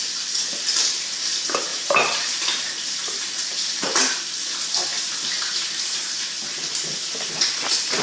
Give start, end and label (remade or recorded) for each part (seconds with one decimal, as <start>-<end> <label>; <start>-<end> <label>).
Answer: 0.0-1.7 recorded; 1.7-4.2 remade; 4.2-4.9 recorded; 4.9-6.4 remade; 6.4-8.0 recorded